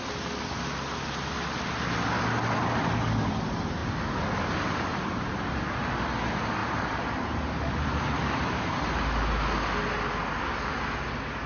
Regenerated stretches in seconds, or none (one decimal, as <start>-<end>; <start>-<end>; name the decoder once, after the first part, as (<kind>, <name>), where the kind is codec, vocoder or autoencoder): 3.8-5.6 (vocoder, BigVGAN v2); 6.6-8.8